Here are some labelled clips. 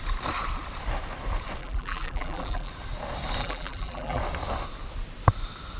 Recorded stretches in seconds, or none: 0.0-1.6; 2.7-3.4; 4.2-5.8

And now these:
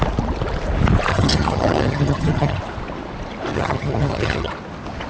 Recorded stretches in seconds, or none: 0.0-1.1; 2.6-3.5; 4.5-5.1

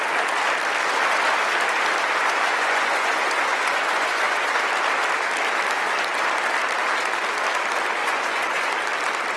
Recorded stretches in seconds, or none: 0.0-2.2; 4.6-8.0; 8.7-9.4